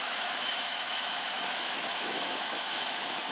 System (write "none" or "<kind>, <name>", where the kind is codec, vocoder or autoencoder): autoencoder, DAC-VAE